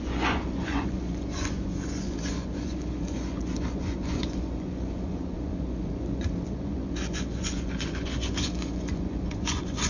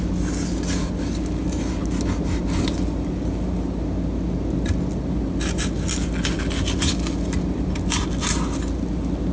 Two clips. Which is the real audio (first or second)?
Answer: second